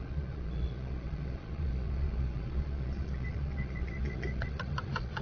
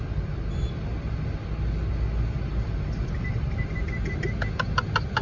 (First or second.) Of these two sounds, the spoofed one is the first